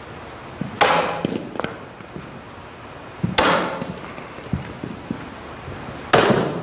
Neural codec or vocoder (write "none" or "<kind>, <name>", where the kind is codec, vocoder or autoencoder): none